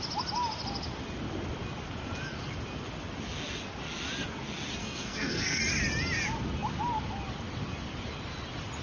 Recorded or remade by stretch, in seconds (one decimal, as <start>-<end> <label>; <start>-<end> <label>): 0.0-4.8 recorded; 4.8-5.6 remade; 5.6-8.8 recorded